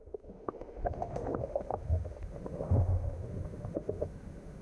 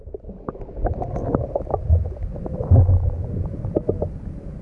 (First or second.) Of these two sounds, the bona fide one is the second